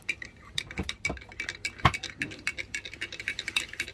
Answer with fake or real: real